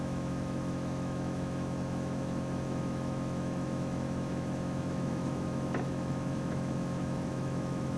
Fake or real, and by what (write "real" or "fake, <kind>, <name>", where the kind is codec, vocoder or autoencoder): fake, autoencoder, DAC-VAE